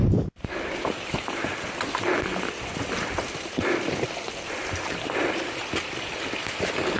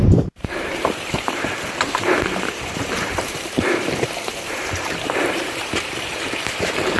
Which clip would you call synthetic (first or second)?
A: second